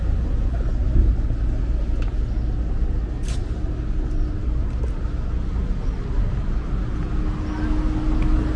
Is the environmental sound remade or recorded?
recorded